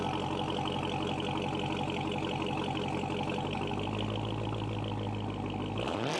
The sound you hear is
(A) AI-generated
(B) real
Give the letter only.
B